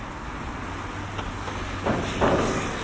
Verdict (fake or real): real